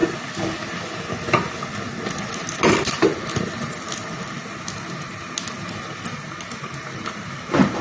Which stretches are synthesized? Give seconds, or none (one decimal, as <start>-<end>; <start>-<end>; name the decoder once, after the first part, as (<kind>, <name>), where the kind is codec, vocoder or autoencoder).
none